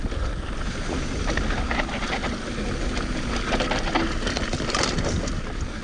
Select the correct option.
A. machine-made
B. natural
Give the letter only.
B